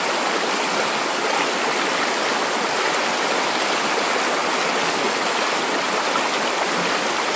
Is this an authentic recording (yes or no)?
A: yes